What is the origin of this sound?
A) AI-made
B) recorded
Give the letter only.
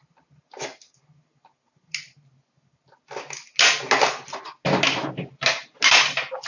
B